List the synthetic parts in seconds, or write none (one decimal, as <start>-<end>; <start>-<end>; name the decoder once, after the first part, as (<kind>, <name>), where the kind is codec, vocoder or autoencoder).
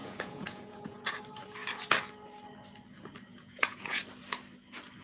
0.0-1.2 (vocoder, Vocos); 3.3-4.0